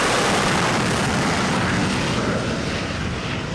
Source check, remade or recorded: recorded